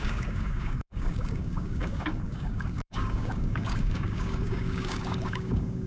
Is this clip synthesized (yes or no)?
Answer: yes